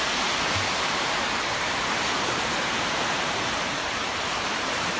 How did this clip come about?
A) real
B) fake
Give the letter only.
B